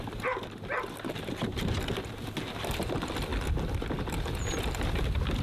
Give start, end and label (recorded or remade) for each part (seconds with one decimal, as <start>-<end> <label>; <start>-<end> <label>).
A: 0.0-5.4 recorded